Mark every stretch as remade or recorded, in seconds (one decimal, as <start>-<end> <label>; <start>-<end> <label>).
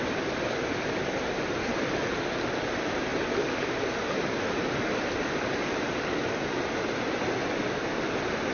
0.0-5.6 recorded; 5.6-6.7 remade; 6.7-8.5 recorded